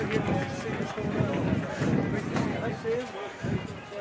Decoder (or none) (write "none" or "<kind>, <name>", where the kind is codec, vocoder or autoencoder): none